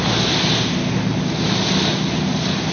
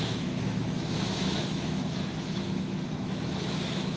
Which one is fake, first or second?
second